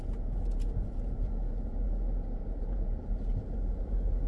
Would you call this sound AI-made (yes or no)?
yes